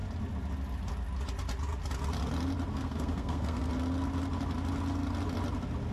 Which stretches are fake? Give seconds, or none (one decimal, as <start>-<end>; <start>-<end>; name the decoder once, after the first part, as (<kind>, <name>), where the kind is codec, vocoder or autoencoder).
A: 2.7-3.7 (codec, SNAC)